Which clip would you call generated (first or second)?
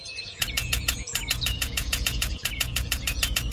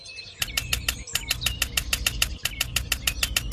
first